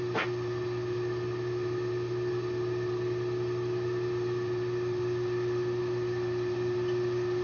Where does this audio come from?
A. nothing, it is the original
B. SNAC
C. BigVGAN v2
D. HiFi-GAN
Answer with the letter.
A